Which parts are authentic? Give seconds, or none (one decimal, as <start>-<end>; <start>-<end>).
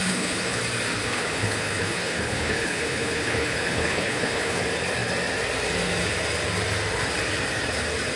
0.6-1.0; 4.6-8.2